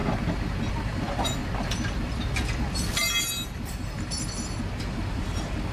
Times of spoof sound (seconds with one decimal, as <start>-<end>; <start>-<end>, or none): 0.7-1.4; 4.8-5.7

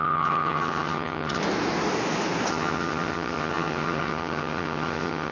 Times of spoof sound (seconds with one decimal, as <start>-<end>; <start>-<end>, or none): 0.0-1.4; 2.5-5.3

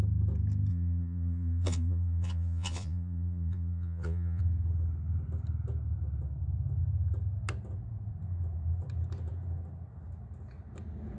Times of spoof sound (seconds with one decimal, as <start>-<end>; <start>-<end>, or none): 0.7-4.4

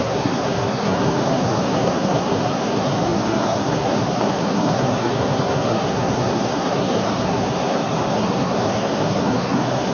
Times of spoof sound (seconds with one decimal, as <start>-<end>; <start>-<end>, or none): 0.0-9.9

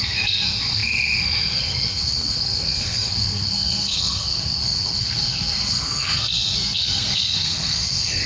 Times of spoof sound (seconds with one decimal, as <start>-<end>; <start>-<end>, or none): 0.0-8.3